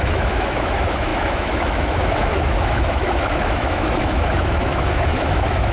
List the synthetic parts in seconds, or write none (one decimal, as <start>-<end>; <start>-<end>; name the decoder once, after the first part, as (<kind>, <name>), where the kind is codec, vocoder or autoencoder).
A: 0.0-5.7 (autoencoder, DAC-VAE)

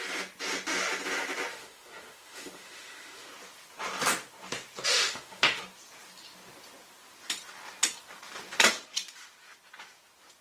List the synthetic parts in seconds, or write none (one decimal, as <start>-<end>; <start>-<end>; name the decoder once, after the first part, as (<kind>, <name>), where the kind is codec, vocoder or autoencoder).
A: 1.5-3.3 (autoencoder, DAC-VAE); 4.9-5.6

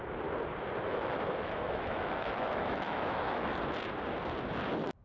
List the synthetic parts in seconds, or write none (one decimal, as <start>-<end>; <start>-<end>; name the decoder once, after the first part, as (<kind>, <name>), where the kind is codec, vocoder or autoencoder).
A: 0.9-3.5 (autoencoder, DAC-VAE)

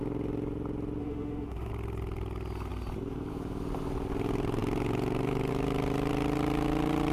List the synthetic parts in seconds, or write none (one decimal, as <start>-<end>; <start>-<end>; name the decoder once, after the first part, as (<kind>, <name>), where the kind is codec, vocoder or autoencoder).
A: 1.0-1.7 (autoencoder, DAC-VAE)

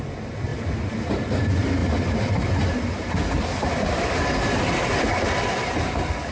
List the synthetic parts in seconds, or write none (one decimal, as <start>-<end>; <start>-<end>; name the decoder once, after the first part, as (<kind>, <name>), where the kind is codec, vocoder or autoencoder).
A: none